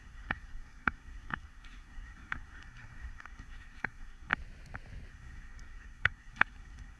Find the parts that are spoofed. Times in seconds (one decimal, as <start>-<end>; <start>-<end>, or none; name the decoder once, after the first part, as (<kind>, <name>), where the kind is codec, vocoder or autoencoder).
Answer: 0.0-4.3 (codec, SNAC); 5.1-7.0